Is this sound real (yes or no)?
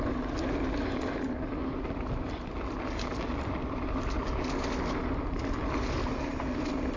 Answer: yes